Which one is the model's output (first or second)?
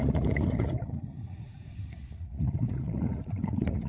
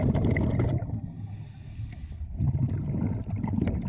first